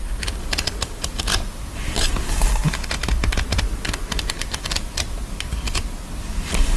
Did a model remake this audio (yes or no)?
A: no